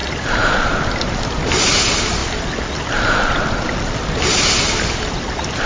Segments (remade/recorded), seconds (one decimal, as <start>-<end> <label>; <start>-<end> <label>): 0.0-5.7 recorded